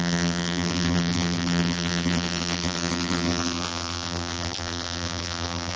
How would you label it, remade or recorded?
remade